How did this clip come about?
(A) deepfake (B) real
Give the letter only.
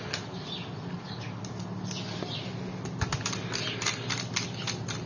B